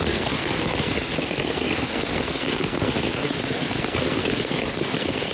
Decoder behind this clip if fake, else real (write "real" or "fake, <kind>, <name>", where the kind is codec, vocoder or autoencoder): fake, codec, SNAC